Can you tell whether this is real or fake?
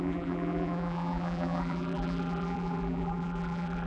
fake